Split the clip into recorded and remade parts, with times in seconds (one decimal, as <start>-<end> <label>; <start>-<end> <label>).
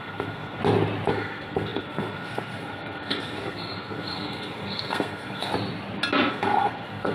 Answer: 0.0-0.6 remade; 0.6-1.1 recorded; 1.1-5.5 remade; 5.5-6.3 recorded; 6.3-7.1 remade